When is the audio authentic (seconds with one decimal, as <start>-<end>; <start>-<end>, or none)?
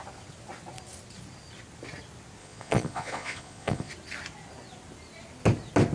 0.0-2.4; 3.9-5.9